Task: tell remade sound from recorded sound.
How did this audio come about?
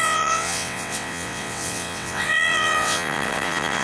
remade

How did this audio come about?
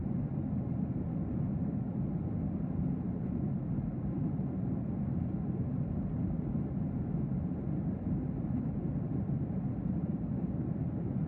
recorded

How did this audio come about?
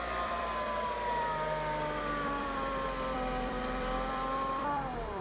remade